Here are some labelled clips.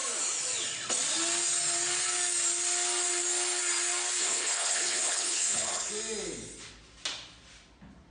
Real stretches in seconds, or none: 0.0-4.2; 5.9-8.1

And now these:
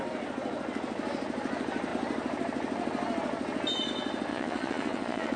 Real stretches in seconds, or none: 0.0-4.3

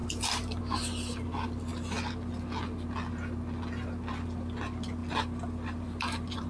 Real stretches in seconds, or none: 0.6-1.7; 2.3-5.0

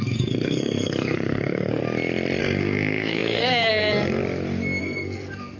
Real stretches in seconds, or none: 1.8-2.4; 4.2-4.8

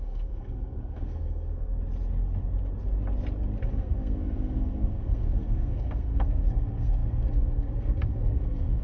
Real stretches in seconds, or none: 1.7-3.7

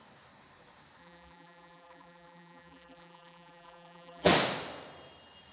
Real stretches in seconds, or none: 0.0-1.0; 4.3-5.5

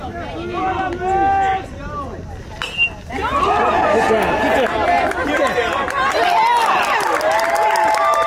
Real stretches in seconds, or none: 0.0-1.5; 2.3-8.3

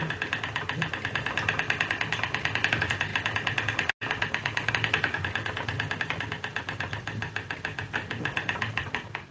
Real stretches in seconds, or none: 0.0-9.3